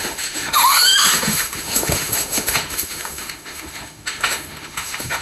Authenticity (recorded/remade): remade